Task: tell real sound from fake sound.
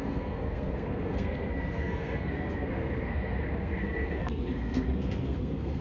fake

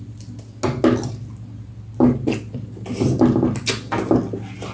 real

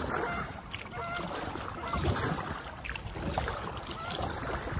real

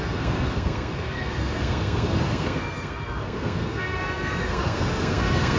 fake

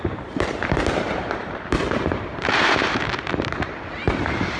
fake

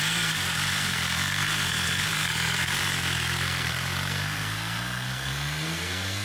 fake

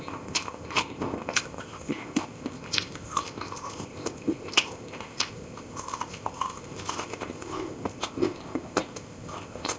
fake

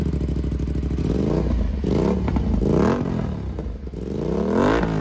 real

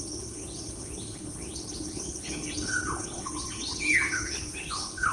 fake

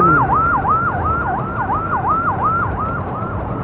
real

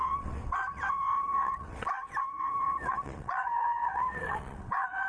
fake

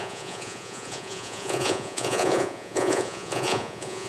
fake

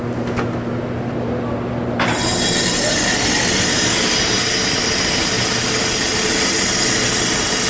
real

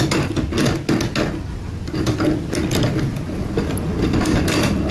real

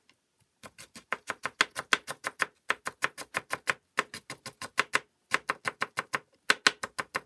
real